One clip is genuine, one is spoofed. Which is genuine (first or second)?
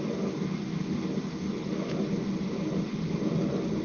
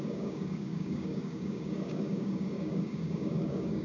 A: first